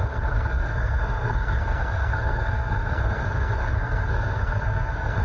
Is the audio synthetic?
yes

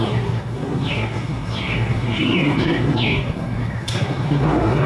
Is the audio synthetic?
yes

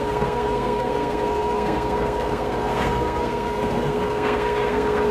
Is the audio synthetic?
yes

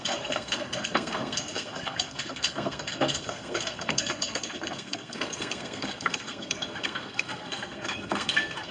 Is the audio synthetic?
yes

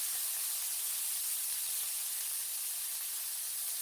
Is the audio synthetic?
no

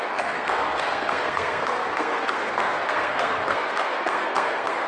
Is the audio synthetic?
yes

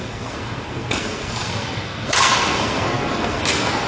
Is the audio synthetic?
yes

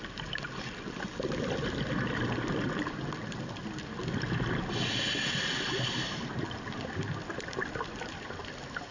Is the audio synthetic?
no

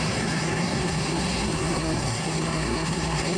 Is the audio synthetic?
yes